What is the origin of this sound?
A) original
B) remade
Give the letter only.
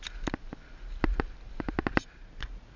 A